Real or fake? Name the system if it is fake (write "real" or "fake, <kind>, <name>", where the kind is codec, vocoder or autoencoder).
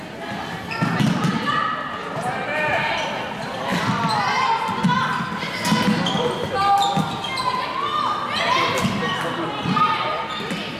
real